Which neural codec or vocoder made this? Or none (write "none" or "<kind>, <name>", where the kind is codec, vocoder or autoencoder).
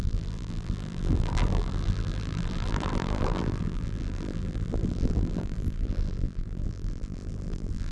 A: vocoder, BigVGAN v2